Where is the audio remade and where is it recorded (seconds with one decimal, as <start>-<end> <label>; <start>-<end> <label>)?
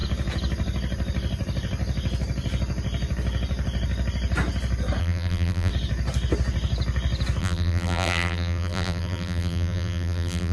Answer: 0.0-5.0 recorded; 5.0-5.7 remade; 5.7-7.4 recorded; 7.4-10.5 remade